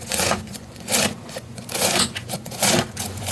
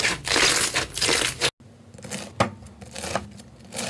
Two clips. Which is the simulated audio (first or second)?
first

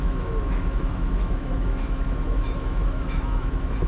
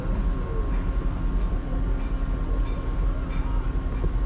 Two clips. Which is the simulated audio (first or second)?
first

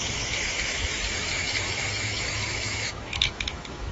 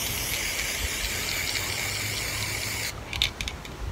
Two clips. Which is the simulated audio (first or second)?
first